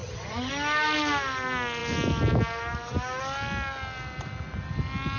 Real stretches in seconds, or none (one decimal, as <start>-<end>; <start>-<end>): 0.5-5.2